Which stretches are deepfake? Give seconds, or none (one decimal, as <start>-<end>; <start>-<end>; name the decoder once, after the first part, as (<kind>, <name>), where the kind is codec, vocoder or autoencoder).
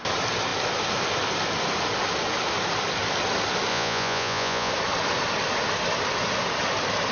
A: 3.7-4.7 (vocoder, Vocos)